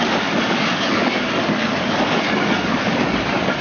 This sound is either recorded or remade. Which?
remade